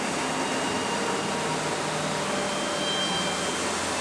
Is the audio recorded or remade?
recorded